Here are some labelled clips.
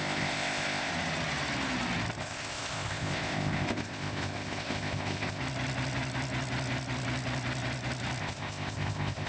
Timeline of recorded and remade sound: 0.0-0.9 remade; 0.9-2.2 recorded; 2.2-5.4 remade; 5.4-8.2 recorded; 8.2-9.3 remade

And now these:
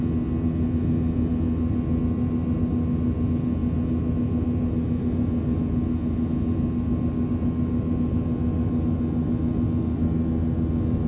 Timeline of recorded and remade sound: 0.0-11.1 recorded

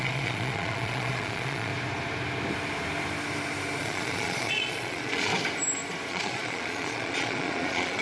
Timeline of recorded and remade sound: 0.0-1.7 remade; 1.7-3.8 recorded; 3.8-5.3 remade; 5.3-6.1 recorded; 6.1-8.0 remade

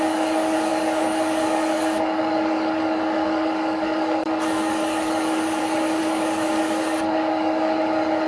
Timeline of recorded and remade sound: 0.0-8.3 remade

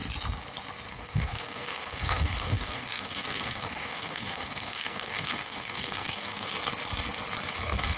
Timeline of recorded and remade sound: 0.0-0.9 recorded; 0.9-6.6 remade; 6.6-7.5 recorded; 7.5-8.0 remade

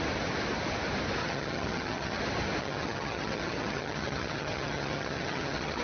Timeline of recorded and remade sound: 0.0-1.2 recorded; 1.2-2.2 remade; 2.2-2.6 recorded; 2.6-5.8 remade